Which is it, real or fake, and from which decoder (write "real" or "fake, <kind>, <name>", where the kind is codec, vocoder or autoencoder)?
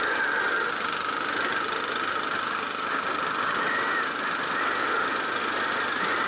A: real